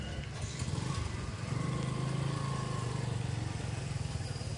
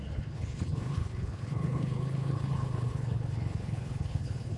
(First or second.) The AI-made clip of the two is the second